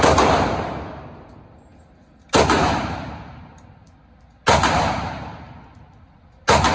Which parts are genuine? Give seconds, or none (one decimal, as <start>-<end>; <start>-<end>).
0.0-6.7